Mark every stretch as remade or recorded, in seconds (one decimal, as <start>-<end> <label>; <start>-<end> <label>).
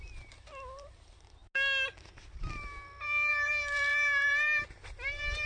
0.0-1.4 remade; 1.4-3.3 recorded; 3.3-5.5 remade